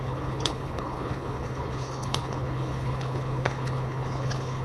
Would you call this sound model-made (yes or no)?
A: yes